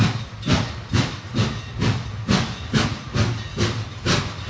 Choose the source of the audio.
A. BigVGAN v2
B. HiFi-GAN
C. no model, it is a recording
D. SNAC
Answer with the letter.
C